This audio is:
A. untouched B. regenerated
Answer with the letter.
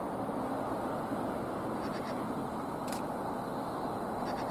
A